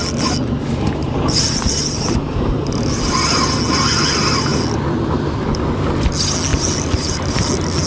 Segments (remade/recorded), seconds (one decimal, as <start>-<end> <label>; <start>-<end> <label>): 0.0-1.0 recorded; 1.0-3.0 remade; 3.0-6.5 recorded; 6.5-7.5 remade; 7.5-7.9 recorded